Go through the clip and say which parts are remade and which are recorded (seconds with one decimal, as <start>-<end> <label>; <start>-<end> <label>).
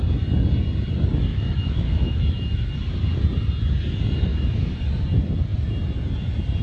0.0-1.3 recorded; 1.3-2.7 remade; 2.7-4.3 recorded; 4.3-4.8 remade; 4.8-6.6 recorded